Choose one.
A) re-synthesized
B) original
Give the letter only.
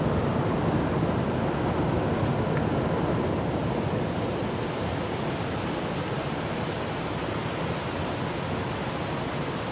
B